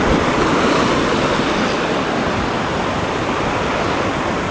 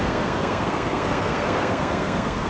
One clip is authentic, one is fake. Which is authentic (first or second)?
first